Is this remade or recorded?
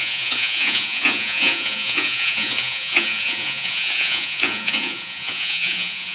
remade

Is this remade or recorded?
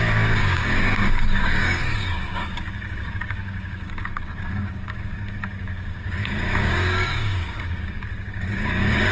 remade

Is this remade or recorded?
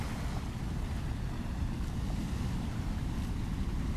recorded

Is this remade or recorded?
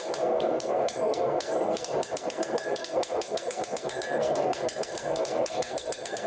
remade